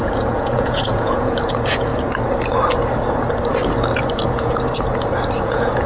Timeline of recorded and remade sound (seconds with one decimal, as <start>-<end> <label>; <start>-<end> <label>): 0.0-1.9 remade; 1.9-5.4 recorded; 5.4-5.9 remade